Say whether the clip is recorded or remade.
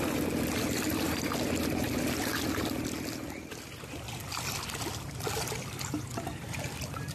recorded